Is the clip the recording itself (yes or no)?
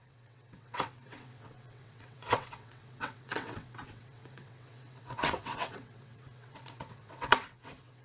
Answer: no